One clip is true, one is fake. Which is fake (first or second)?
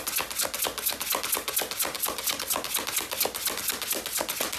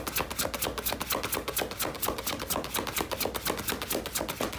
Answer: second